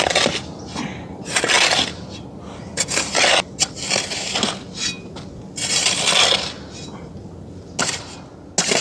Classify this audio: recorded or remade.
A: recorded